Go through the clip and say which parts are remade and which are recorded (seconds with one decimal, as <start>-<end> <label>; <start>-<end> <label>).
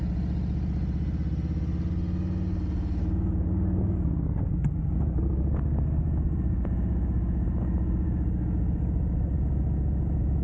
0.0-10.4 recorded